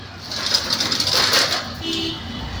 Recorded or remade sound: recorded